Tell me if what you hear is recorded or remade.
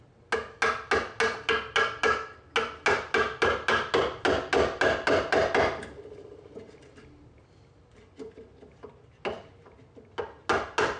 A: recorded